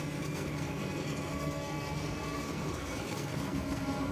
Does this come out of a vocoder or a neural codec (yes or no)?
yes